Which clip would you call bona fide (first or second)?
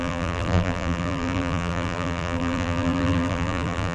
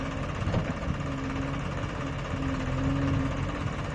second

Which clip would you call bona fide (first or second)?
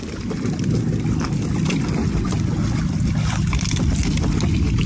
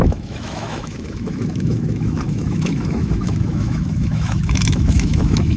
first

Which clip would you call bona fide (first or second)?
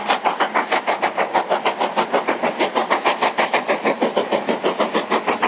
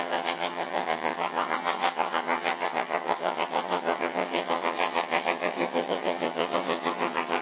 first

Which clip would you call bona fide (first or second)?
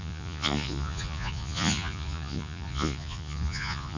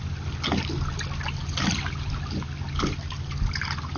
second